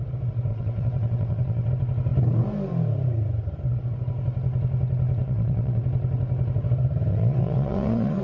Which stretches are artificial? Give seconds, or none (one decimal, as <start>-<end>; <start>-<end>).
0.5-1.7; 5.2-5.8; 7.1-8.2